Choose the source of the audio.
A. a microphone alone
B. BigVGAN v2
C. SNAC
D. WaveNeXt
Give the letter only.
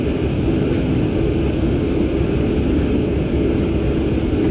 A